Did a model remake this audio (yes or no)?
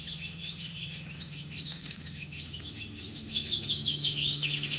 yes